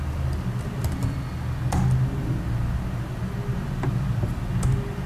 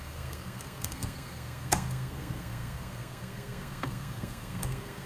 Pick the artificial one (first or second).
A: second